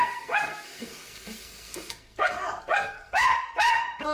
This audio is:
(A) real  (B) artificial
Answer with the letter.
B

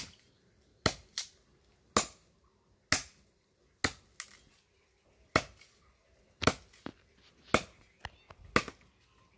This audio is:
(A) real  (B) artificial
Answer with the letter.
A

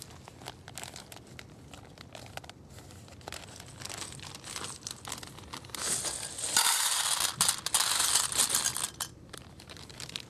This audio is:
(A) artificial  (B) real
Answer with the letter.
B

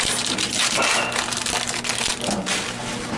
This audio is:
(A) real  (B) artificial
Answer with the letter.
A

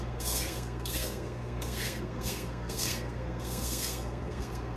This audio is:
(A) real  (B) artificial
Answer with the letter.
B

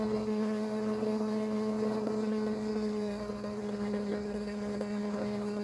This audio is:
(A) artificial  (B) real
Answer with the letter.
A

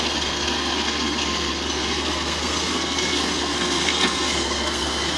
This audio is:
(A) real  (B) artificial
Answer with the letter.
B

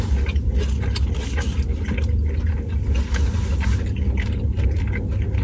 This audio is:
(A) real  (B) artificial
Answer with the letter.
A